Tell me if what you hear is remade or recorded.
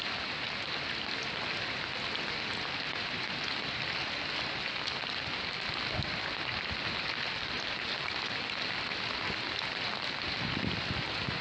recorded